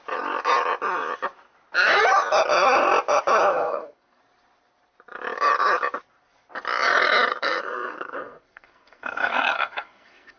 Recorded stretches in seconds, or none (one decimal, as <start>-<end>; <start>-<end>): 0.0-3.5; 4.2-7.3

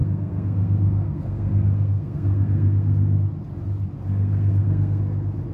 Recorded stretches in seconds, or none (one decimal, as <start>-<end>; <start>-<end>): 3.2-4.1; 5.0-5.5

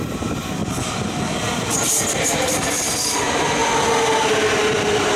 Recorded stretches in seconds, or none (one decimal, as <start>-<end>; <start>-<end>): 0.0-5.2

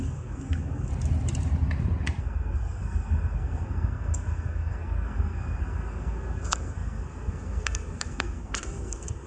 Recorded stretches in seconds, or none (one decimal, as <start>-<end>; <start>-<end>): 0.9-2.2

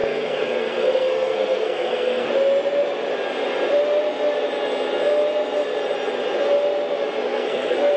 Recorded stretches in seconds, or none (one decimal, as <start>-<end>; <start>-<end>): 2.3-7.3

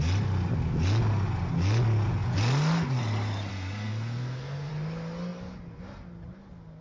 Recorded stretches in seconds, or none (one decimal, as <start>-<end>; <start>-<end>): 0.0-3.5; 4.7-6.8